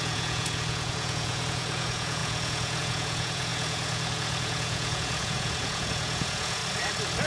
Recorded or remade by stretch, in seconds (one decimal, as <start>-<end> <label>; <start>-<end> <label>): 0.0-6.6 remade; 6.6-7.3 recorded